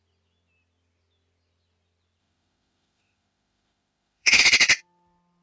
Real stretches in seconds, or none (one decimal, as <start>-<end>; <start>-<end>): 0.0-2.2; 4.4-5.4